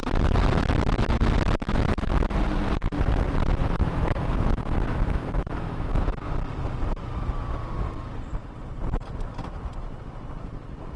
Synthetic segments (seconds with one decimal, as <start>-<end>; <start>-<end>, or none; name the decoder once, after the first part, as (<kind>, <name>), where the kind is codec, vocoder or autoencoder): 3.6-6.3 (autoencoder, DAC-VAE)